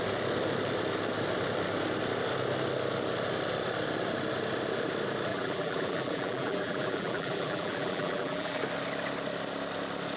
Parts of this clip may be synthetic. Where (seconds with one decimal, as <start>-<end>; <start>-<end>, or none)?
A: 5.3-8.6